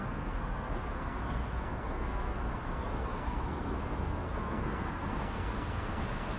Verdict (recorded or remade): remade